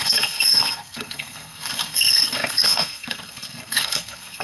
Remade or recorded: remade